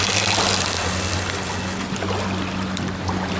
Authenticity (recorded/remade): recorded